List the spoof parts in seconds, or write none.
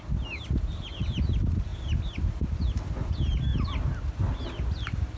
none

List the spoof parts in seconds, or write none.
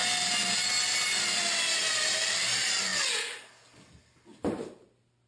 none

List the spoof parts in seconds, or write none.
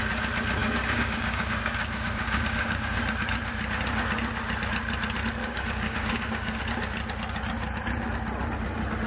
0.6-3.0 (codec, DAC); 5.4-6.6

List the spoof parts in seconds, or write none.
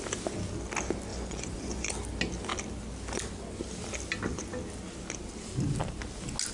1.1-1.9 (vocoder, Vocos)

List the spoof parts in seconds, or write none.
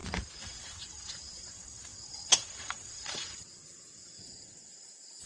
0.0-5.3 (vocoder, WaveNeXt)